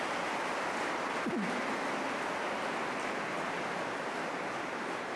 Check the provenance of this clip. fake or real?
real